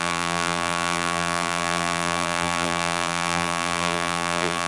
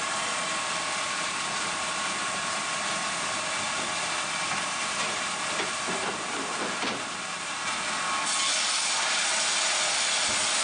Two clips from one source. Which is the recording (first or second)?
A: second